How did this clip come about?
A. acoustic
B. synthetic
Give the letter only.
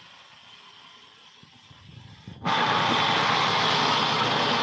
A